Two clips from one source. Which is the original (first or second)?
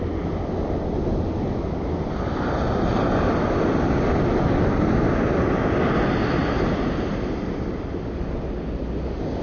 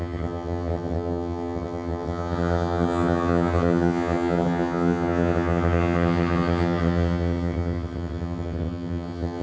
first